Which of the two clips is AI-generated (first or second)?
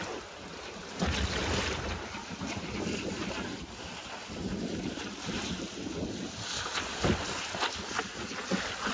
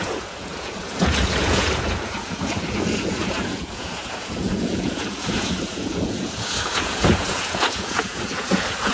second